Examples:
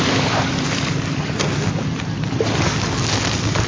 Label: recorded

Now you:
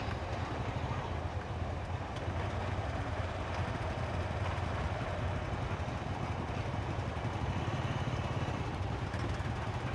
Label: recorded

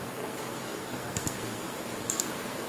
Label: remade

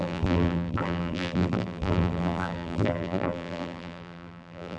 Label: remade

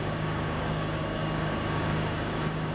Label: remade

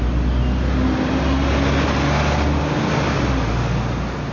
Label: recorded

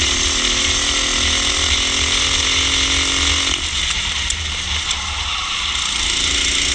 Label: recorded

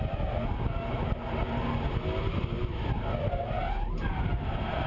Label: recorded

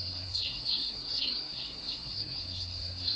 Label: remade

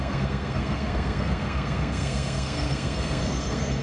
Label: remade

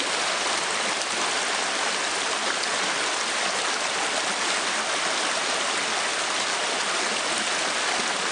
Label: recorded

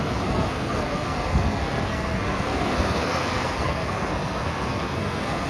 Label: remade